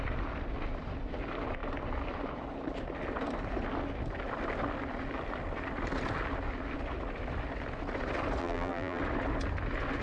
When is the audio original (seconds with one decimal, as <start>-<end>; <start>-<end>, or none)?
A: 0.0-8.4; 9.0-10.0